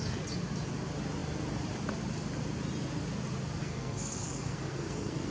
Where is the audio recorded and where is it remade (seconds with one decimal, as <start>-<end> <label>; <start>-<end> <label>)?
0.0-3.6 recorded; 3.6-5.3 remade